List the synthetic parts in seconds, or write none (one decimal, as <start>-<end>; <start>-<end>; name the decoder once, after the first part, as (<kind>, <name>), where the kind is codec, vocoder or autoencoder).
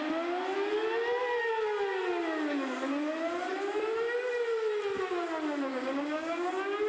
5.7-6.5 (codec, DAC)